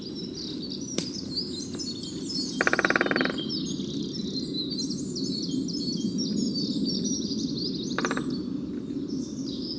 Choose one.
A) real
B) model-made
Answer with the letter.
A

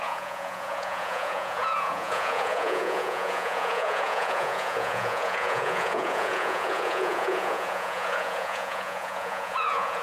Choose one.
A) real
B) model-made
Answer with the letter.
B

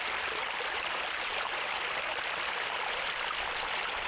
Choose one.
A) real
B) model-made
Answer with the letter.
A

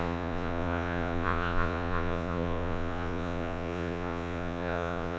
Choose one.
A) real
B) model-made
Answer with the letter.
B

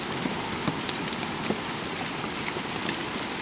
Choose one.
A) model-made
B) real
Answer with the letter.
B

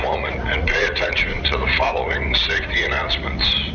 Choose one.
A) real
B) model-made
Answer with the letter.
B